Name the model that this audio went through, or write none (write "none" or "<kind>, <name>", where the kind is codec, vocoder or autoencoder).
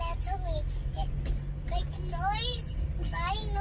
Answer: none